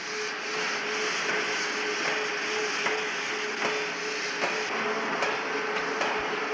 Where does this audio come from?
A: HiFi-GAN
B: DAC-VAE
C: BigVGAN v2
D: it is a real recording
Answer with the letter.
D